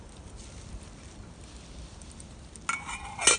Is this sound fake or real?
real